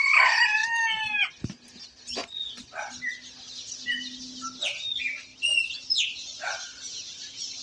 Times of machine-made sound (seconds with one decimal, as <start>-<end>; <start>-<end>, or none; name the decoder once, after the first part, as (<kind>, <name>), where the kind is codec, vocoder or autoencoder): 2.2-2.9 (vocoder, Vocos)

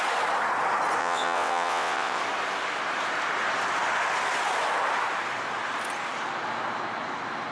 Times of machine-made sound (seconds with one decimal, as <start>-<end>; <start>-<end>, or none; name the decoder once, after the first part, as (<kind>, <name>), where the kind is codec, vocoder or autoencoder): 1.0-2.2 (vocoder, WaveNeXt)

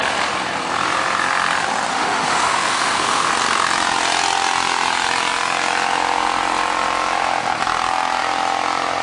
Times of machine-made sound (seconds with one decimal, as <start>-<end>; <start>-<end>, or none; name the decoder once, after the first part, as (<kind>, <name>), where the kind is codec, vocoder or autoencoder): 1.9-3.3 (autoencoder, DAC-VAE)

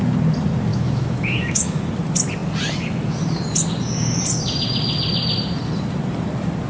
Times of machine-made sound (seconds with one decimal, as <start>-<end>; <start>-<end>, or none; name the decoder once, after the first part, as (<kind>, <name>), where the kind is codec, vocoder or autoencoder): 0.7-1.8 (autoencoder, DAC-VAE)